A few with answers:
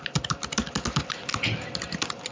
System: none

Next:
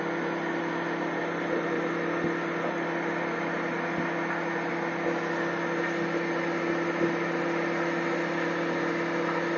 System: none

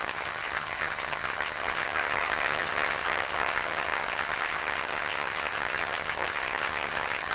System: vocoder, HiFi-GAN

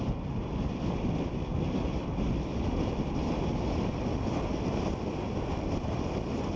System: none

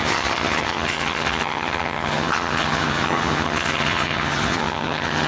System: vocoder, HiFi-GAN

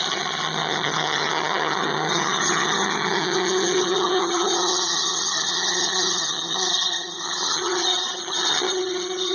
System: vocoder, HiFi-GAN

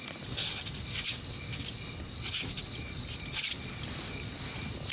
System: none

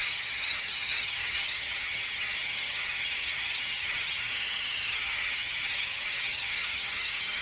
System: vocoder, HiFi-GAN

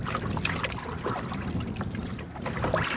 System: none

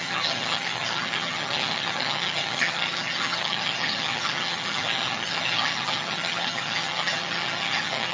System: vocoder, HiFi-GAN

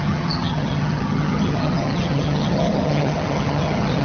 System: vocoder, HiFi-GAN